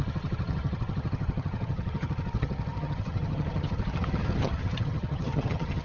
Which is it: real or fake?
fake